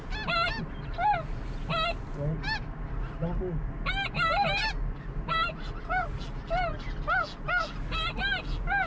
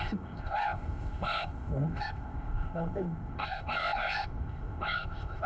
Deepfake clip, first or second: second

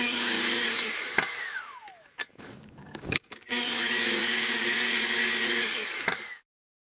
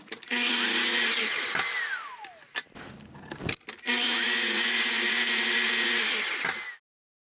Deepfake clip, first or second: first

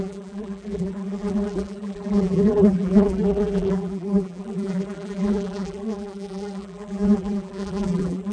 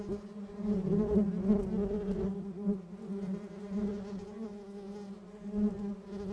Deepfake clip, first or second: first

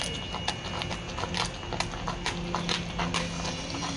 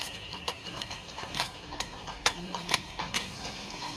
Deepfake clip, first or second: second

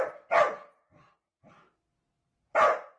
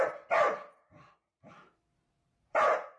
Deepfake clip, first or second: second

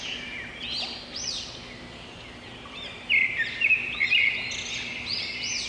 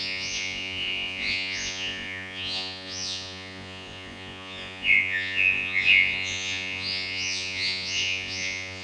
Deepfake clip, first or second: second